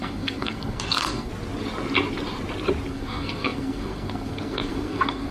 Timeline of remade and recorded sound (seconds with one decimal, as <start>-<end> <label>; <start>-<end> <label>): 0.0-1.3 remade; 1.3-2.9 recorded; 2.9-5.3 remade